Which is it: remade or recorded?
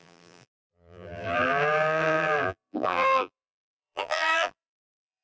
remade